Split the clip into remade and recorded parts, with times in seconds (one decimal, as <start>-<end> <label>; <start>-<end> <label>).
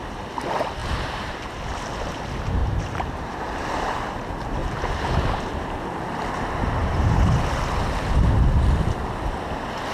0.0-0.8 recorded; 0.8-1.5 remade; 1.5-2.6 recorded; 2.6-3.4 remade; 3.4-4.6 recorded; 4.6-6.0 remade; 6.0-6.8 recorded; 6.8-7.6 remade; 7.6-9.9 recorded